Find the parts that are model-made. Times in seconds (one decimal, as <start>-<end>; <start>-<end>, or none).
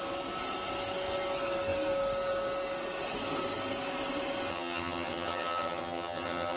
4.5-6.6